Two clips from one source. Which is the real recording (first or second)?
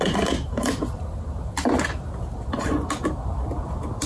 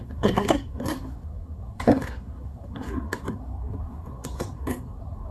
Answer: first